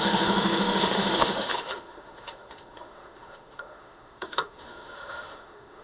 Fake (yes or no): yes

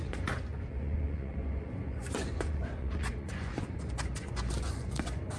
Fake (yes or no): yes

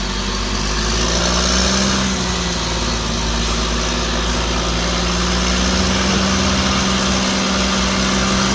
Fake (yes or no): no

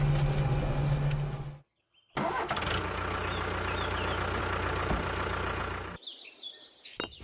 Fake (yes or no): no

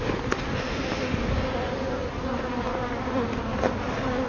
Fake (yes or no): no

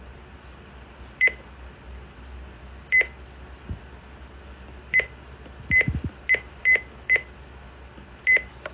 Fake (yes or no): no